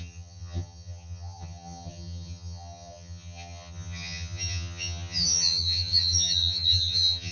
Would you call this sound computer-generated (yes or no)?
yes